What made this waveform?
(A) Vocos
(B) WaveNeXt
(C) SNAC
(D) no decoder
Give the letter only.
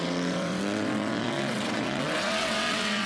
B